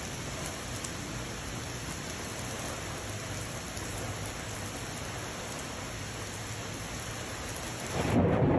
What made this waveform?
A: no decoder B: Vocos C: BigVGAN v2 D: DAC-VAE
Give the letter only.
A